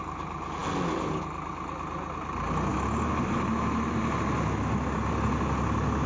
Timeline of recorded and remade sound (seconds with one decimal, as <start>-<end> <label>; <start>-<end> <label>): 0.0-6.1 recorded